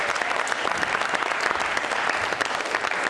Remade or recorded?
remade